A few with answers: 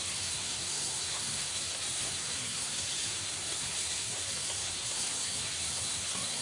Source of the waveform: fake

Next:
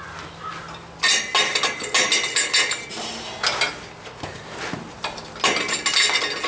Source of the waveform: real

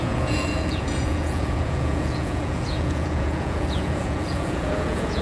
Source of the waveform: fake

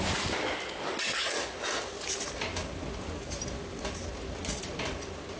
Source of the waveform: real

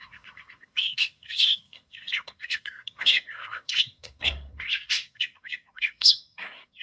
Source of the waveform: fake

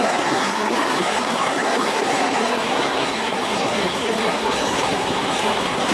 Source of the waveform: fake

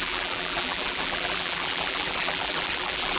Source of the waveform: fake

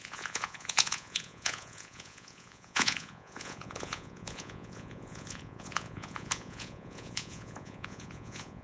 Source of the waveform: fake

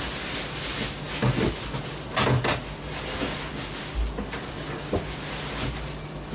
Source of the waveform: real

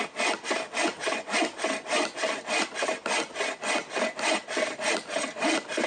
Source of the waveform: real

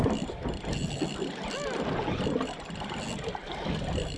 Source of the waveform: real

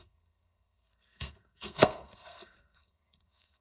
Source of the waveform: fake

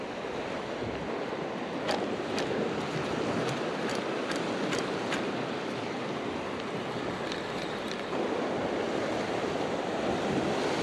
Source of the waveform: real